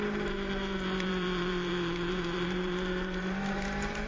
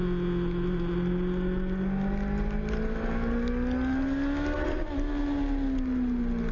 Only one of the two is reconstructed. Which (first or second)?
first